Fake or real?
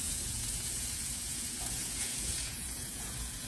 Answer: fake